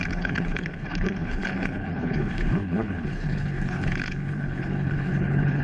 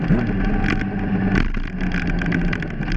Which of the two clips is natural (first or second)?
second